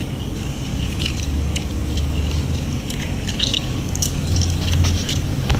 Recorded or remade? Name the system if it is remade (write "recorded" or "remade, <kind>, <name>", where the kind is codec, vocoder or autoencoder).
remade, codec, DAC